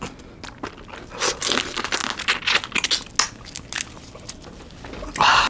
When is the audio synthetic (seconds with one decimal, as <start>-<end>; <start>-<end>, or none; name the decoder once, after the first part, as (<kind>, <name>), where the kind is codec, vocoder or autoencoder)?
none

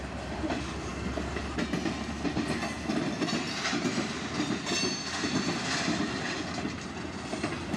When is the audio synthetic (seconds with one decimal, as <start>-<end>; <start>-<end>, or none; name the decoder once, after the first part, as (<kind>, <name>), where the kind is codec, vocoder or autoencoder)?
none

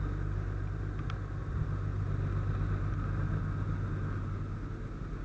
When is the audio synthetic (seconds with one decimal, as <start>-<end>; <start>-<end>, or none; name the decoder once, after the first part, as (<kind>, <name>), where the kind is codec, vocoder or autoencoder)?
none

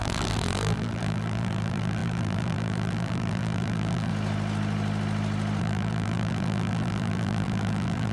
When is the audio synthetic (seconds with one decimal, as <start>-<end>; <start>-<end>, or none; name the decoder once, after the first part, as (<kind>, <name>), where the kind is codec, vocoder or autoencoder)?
0.0-4.1 (vocoder, BigVGAN v2); 5.6-8.1

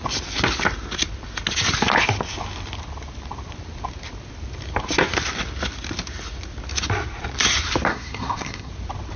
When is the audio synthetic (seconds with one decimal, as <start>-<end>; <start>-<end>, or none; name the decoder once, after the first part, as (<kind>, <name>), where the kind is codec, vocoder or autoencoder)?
7.9-8.7 (codec, SNAC)

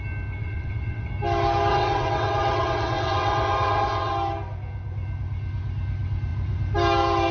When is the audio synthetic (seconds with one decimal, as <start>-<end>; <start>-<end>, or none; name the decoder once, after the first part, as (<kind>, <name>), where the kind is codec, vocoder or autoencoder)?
0.4-1.1 (vocoder, WaveNeXt); 1.7-4.1